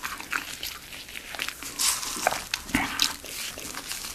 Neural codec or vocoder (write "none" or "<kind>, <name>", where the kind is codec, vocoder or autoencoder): none